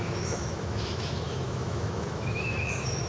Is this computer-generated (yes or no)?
yes